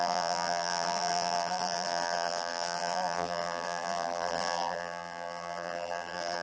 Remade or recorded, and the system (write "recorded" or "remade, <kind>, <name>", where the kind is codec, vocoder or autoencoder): remade, vocoder, BigVGAN v2